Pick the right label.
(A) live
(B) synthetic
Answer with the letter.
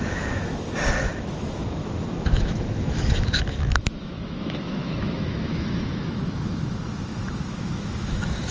B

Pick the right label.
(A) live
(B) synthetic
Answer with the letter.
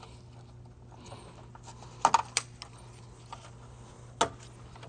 A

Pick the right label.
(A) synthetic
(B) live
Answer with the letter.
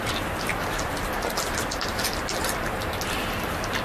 B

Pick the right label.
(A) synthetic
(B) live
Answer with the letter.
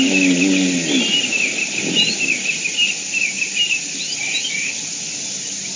B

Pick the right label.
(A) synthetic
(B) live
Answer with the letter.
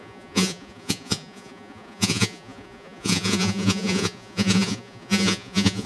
A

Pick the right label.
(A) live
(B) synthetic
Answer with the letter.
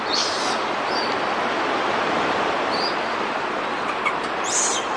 A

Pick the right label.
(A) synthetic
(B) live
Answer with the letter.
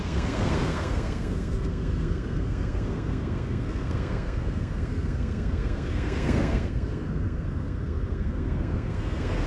A